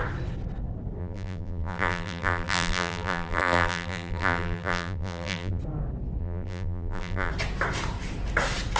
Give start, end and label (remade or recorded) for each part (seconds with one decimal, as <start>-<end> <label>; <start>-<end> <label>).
0.0-1.0 recorded; 1.0-5.6 remade; 5.6-6.2 recorded; 6.2-7.3 remade; 7.3-8.8 recorded